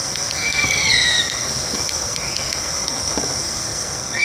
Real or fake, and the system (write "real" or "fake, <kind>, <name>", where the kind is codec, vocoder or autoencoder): fake, codec, SNAC